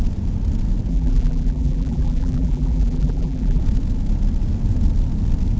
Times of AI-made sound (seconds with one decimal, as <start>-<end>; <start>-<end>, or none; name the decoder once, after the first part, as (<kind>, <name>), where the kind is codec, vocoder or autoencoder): 0.9-3.6 (vocoder, BigVGAN v2)